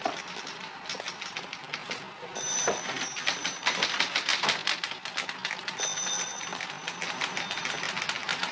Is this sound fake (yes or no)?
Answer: no